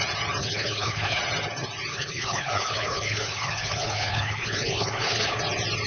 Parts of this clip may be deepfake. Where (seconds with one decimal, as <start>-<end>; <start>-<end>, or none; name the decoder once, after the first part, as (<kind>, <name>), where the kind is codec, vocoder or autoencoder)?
0.4-1.2 (codec, HILCodec); 1.9-5.4